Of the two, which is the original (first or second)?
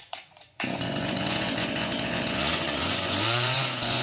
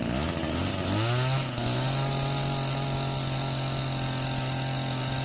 second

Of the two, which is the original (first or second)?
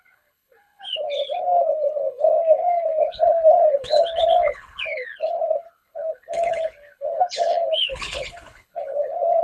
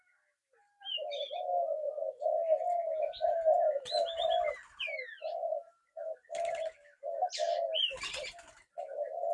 second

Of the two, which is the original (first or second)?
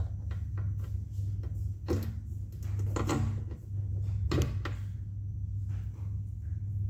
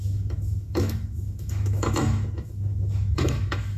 first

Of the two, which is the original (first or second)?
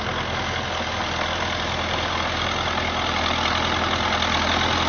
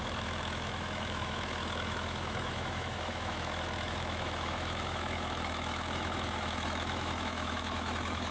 first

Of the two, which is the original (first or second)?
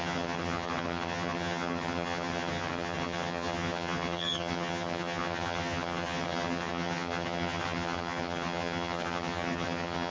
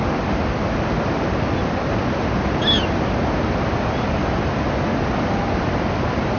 second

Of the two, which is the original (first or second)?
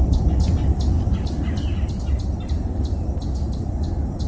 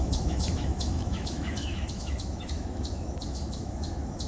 first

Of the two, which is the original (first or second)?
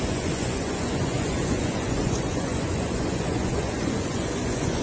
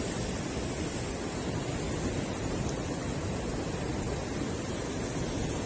second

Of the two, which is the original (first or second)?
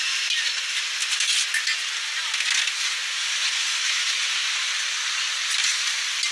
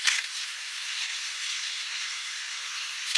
first